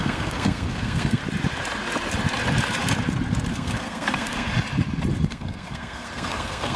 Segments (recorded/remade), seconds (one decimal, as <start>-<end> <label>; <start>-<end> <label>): 0.0-1.2 remade; 1.2-3.5 recorded; 3.5-4.5 remade; 4.5-5.3 recorded; 5.3-6.8 remade